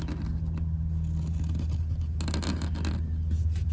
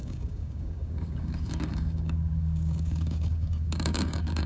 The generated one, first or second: second